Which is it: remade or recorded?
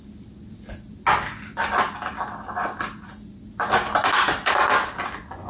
recorded